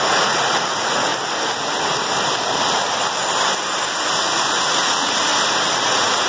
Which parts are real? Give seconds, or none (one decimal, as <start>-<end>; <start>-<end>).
1.1-4.7; 5.3-5.8